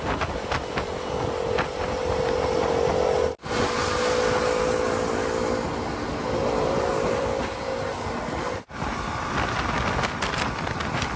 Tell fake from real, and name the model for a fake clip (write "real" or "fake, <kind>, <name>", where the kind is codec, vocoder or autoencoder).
real